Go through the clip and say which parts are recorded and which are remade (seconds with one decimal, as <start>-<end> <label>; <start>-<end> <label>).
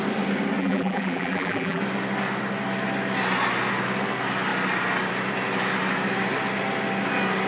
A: 0.0-0.6 recorded; 0.6-1.8 remade; 1.8-7.5 recorded